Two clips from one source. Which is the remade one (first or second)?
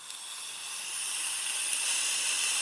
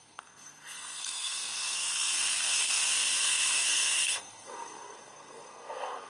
second